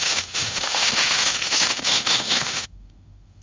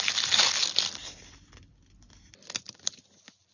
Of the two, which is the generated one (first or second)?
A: first